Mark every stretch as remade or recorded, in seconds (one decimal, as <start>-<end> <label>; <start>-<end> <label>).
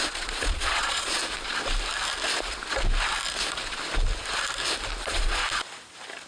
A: 0.0-1.2 remade; 1.2-5.0 recorded; 5.0-5.4 remade; 5.4-6.3 recorded